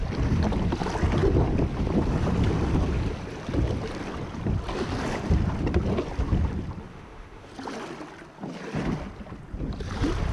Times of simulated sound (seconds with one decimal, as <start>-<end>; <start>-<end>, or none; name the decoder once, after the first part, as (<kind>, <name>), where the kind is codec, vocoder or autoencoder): 6.9-7.5 (autoencoder, DAC-VAE)